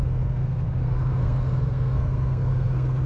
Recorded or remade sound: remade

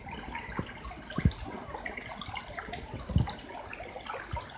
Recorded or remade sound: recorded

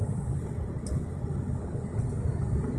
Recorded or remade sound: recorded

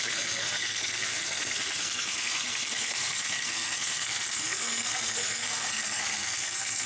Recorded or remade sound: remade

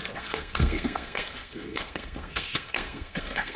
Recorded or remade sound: remade